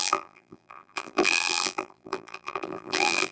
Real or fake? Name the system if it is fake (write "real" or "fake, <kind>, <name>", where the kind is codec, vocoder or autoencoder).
fake, vocoder, BigVGAN v2